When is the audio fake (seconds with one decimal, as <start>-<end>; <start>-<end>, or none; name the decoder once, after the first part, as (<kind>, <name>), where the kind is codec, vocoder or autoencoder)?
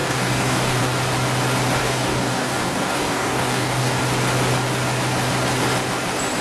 0.0-0.8 (codec, DAC); 1.8-4.0